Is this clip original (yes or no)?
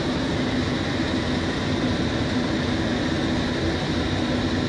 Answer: yes